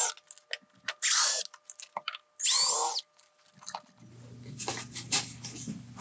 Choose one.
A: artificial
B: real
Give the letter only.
B